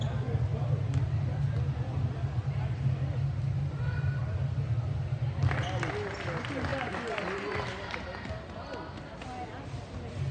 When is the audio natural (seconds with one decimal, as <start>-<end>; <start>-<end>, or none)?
0.0-10.3